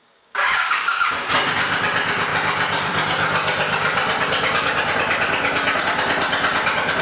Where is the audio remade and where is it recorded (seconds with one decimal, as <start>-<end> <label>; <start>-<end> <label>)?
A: 0.0-1.1 remade; 1.1-7.0 recorded